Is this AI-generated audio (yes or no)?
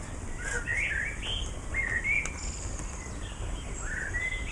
no